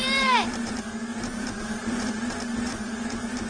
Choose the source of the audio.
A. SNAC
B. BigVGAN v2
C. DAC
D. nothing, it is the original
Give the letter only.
B